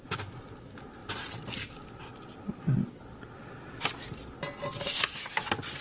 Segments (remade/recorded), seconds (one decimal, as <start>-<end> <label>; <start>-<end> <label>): 0.0-5.8 recorded